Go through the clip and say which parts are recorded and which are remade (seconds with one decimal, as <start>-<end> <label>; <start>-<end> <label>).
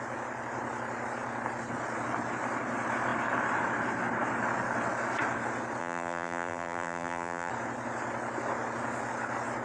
0.0-5.8 recorded; 5.8-7.5 remade; 7.5-9.6 recorded